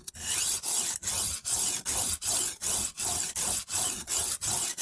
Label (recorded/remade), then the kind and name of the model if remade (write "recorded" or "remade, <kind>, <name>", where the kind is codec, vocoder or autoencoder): recorded